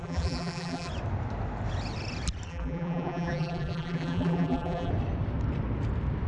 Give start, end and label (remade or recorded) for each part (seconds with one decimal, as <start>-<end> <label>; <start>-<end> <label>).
0.0-0.9 remade; 0.9-2.5 recorded; 2.5-4.9 remade; 4.9-6.3 recorded

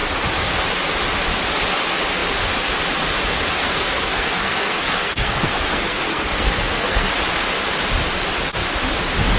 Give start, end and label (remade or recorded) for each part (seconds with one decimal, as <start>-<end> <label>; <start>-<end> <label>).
0.0-3.6 recorded; 3.6-7.1 remade; 7.1-9.4 recorded